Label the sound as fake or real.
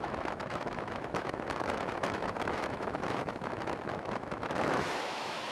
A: fake